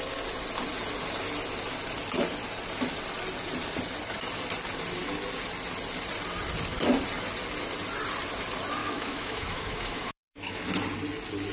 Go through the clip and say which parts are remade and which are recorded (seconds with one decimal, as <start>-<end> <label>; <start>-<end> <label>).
0.0-8.8 recorded; 8.8-10.7 remade; 10.7-11.5 recorded